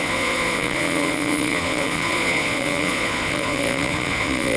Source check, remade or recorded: remade